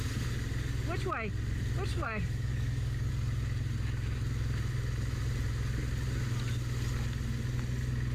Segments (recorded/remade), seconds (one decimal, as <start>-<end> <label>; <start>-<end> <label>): 0.0-1.9 recorded; 1.9-3.1 remade; 3.1-8.1 recorded